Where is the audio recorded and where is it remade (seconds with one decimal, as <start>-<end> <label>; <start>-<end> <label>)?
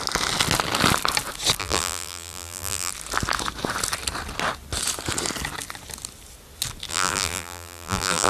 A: 0.0-1.6 recorded; 1.6-2.9 remade; 2.9-6.9 recorded; 6.9-8.3 remade